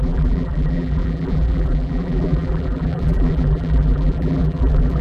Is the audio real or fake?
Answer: fake